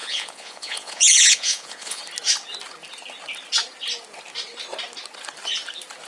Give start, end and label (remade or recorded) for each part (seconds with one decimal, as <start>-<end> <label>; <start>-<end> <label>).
0.0-2.0 remade; 2.0-6.1 recorded